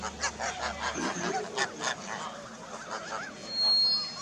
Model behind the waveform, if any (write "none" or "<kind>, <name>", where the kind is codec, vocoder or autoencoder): none